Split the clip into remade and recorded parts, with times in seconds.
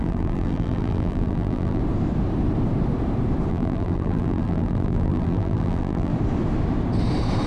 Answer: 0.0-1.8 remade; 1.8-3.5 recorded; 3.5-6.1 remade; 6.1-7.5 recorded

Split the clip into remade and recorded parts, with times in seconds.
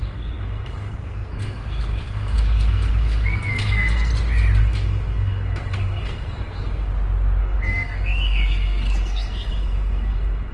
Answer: 0.0-4.1 remade; 4.1-4.6 recorded; 4.6-6.9 remade; 6.9-7.4 recorded; 7.4-10.5 remade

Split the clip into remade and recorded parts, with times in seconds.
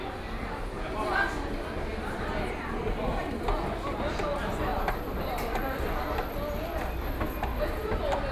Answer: 0.0-8.3 recorded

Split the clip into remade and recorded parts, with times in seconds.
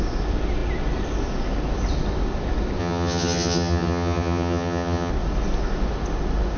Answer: 0.0-2.8 recorded; 2.8-5.1 remade; 5.1-6.6 recorded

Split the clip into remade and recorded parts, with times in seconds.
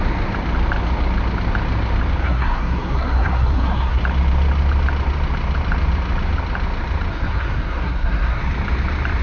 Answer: 0.0-2.2 recorded; 2.2-4.0 remade; 4.0-7.1 recorded; 7.1-8.4 remade; 8.4-9.2 recorded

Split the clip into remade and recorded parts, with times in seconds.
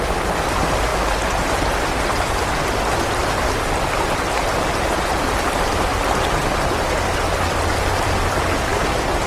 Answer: 0.0-5.1 recorded; 5.1-5.9 remade; 5.9-9.3 recorded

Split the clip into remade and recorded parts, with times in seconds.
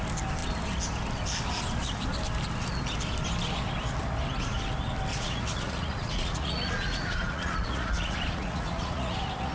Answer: 0.0-5.1 recorded; 5.1-9.5 remade